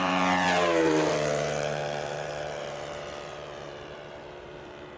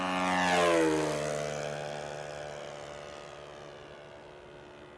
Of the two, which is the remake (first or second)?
first